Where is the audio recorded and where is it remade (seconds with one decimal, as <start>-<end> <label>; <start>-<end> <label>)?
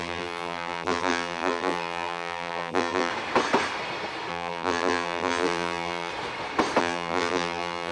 0.0-3.1 remade; 3.1-4.3 recorded; 4.3-6.1 remade; 6.1-6.8 recorded; 6.8-7.9 remade